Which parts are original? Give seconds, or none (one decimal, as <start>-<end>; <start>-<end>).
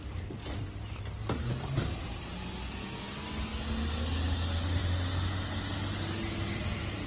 0.0-7.1